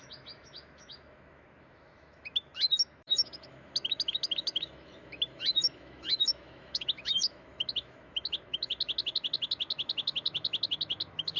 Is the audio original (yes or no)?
no